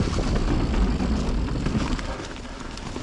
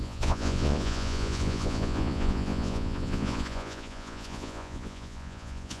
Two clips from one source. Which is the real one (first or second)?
first